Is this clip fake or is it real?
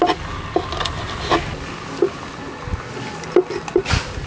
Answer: real